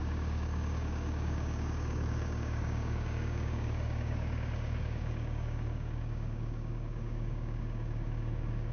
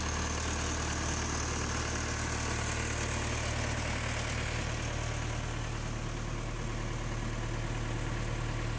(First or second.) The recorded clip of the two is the second